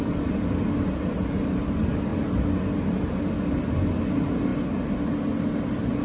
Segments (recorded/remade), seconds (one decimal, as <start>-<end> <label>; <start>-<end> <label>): 0.0-6.0 recorded